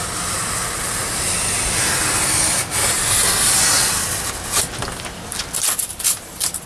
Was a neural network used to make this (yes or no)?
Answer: no